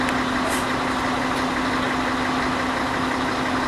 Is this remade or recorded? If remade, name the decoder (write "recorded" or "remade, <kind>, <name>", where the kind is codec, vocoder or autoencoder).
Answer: recorded